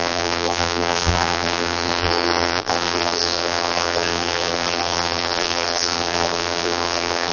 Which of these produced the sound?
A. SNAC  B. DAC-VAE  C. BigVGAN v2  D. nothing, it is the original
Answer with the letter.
C